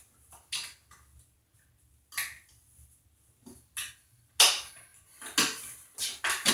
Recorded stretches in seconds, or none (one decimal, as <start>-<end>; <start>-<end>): 0.0-6.5